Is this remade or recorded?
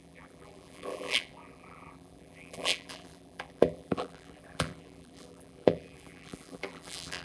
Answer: remade